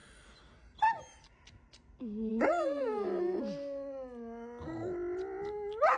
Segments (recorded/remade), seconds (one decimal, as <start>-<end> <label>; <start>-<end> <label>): 0.0-2.3 recorded; 2.3-3.4 remade; 3.4-6.0 recorded